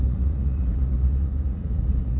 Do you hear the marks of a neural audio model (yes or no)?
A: yes